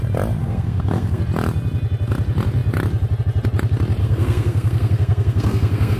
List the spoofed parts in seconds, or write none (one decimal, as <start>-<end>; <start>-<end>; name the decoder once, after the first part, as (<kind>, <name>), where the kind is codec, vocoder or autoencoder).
0.4-1.2 (codec, SNAC); 4.0-6.0